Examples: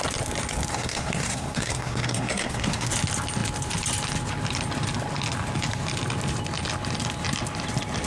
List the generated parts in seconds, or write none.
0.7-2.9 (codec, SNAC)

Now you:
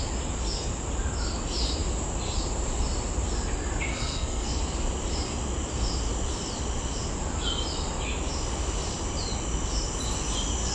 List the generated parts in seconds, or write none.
3.9-4.6 (codec, SNAC)

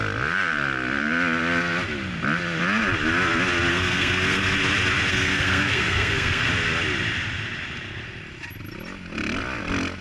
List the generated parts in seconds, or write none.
3.7-4.6 (codec, SNAC); 5.1-6.5

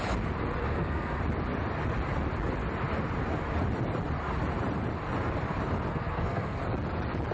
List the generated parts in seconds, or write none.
0.6-1.2 (codec, SNAC); 5.9-6.6

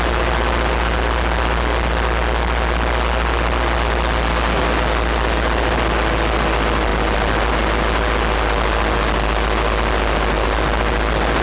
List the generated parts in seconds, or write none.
none

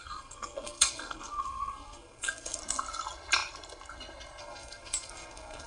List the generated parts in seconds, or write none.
0.0-2.6 (codec, SNAC); 4.4-5.7

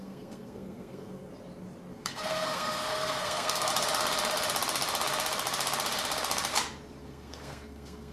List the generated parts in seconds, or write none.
0.0-1.3 (codec, SNAC); 1.9-3.7; 7.0-8.1